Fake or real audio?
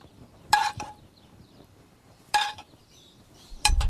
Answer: fake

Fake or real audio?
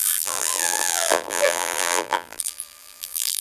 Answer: fake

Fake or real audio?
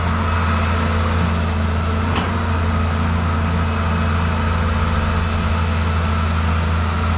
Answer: real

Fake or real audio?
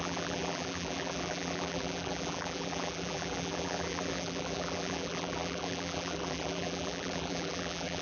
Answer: fake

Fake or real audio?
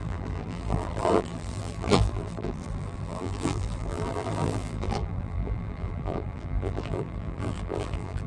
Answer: fake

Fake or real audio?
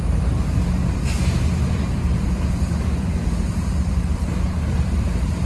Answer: fake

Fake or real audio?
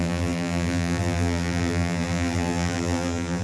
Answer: fake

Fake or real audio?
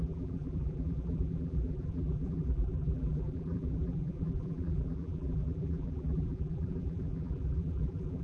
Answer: fake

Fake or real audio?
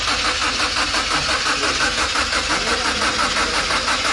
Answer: real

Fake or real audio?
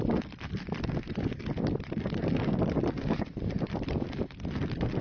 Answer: fake